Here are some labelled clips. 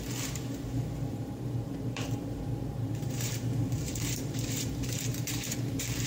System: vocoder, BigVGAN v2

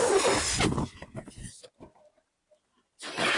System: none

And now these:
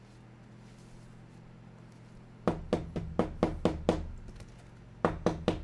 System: none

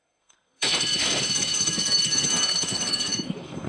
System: codec, SNAC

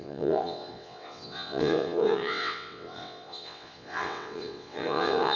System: vocoder, WaveNeXt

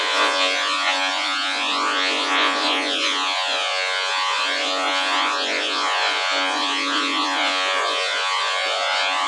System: vocoder, Vocos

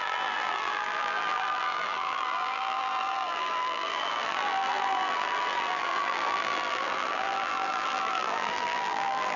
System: vocoder, BigVGAN v2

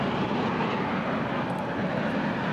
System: none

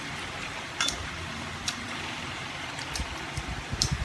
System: vocoder, BigVGAN v2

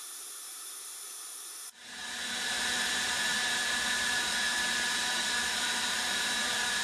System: vocoder, BigVGAN v2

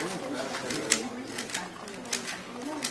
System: none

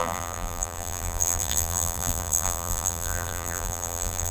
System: vocoder, BigVGAN v2